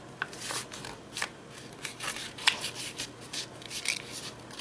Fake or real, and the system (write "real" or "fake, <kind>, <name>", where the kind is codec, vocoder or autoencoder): real